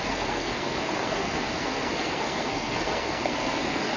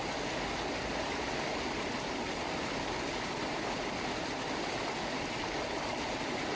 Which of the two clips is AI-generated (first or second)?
first